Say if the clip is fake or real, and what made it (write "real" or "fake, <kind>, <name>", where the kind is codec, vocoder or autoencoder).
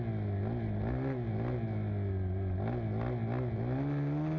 real